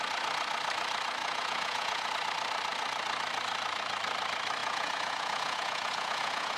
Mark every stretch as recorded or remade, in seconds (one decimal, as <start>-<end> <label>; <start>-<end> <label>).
0.0-1.2 recorded; 1.2-2.1 remade; 2.1-4.6 recorded; 4.6-6.6 remade